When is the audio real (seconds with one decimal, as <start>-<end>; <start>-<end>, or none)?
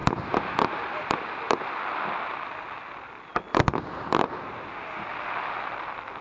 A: 0.0-6.2